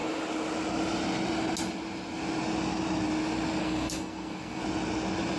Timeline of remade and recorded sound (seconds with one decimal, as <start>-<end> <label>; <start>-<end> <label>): 0.0-3.6 recorded; 3.6-4.6 remade; 4.6-5.4 recorded